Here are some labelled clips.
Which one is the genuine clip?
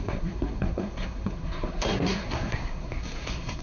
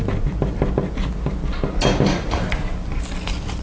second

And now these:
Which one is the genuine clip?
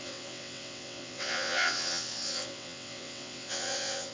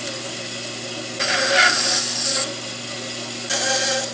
second